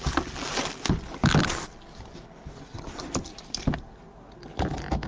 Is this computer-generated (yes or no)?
no